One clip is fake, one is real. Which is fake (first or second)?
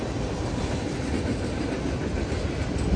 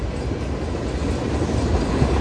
first